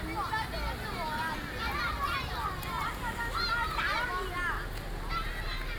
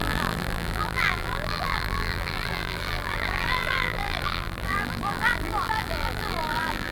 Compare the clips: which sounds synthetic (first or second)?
second